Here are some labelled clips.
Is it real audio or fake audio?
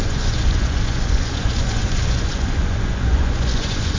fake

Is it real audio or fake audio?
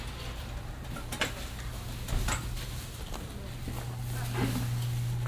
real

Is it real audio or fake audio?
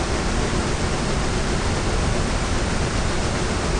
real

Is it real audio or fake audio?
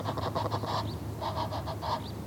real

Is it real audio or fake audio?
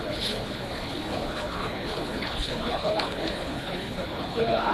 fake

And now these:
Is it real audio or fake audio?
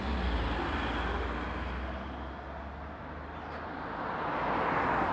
real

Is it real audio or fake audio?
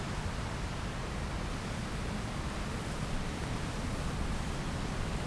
real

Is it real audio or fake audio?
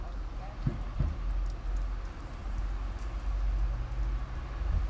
real